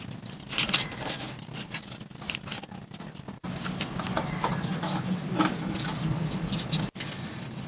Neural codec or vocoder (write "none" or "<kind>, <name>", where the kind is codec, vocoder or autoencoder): none